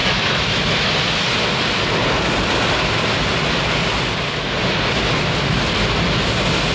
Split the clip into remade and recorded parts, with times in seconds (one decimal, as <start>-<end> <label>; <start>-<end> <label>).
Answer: 0.0-0.9 remade; 0.9-6.7 recorded